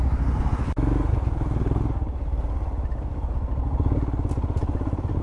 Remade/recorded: recorded